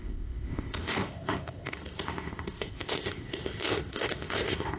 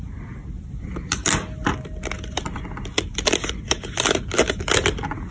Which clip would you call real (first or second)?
second